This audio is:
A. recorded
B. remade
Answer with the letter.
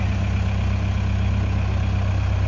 A